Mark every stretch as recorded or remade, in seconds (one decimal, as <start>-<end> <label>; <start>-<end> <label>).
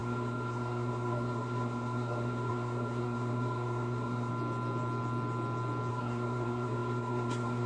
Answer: 0.0-4.3 remade; 4.3-5.9 recorded; 5.9-7.7 remade